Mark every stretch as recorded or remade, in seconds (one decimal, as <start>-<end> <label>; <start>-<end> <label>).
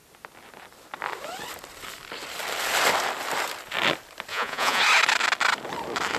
0.0-4.3 recorded; 4.3-4.8 remade; 4.8-6.2 recorded